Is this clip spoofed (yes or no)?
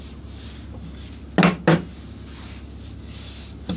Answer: no